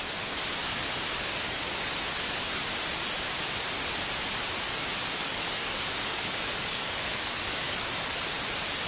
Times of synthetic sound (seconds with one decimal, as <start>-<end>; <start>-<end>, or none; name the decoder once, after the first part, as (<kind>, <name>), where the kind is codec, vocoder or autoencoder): 0.6-1.9 (codec, DAC); 5.0-7.9